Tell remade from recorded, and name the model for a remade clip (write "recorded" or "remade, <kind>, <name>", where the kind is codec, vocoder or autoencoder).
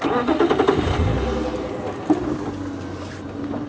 recorded